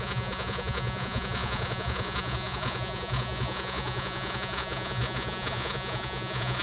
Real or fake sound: fake